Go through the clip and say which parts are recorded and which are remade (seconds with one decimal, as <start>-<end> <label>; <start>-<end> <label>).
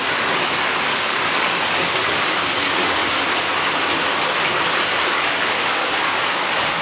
0.0-3.0 remade; 3.0-5.1 recorded; 5.1-6.8 remade